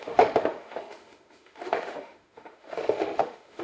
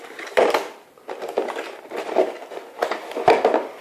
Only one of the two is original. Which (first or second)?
second